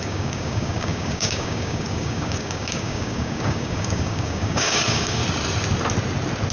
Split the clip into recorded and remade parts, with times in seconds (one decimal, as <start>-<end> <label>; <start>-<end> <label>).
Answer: 0.0-5.2 remade; 5.2-6.5 recorded